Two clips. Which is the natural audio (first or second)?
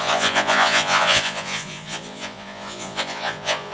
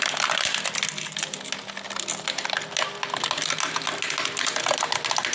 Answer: second